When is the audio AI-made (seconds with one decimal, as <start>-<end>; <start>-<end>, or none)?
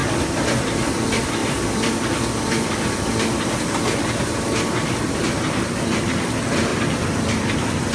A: 0.0-0.6; 1.4-6.0; 6.7-7.9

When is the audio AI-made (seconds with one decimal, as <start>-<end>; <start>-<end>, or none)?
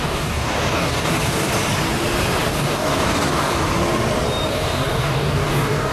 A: 0.0-1.5; 2.5-3.5; 4.5-5.9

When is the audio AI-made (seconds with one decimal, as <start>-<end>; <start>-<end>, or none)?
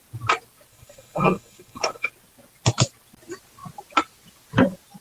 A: 0.7-2.1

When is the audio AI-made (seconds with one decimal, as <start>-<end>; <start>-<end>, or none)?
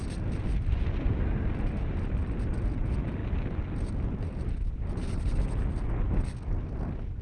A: none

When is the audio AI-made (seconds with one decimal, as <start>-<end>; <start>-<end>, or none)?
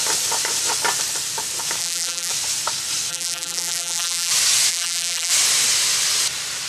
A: 1.8-2.3; 3.1-4.3; 4.7-5.3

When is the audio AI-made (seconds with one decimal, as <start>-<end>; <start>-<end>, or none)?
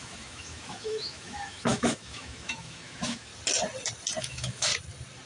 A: 0.0-3.3; 4.2-4.7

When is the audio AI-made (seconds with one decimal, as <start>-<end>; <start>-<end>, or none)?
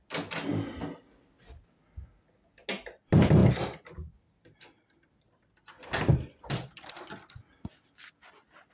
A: none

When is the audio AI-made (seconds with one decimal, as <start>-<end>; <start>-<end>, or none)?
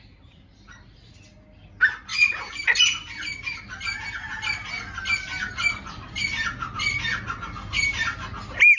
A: none